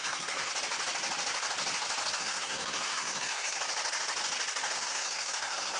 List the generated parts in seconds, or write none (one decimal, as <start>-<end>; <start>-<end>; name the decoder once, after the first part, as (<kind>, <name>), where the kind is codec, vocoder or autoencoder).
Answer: 0.0-0.5 (codec, SNAC); 2.2-3.6; 4.7-5.8